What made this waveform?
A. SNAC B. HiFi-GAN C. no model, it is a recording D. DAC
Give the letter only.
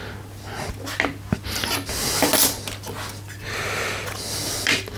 C